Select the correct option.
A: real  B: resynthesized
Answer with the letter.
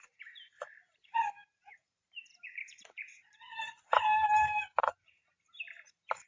B